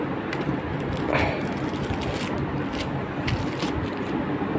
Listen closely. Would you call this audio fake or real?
real